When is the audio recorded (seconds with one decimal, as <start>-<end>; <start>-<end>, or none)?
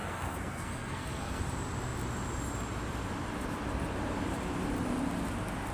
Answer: 1.4-5.7